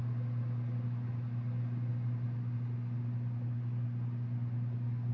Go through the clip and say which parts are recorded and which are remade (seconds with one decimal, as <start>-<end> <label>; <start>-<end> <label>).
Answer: 0.0-5.1 recorded